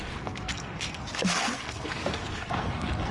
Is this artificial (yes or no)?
yes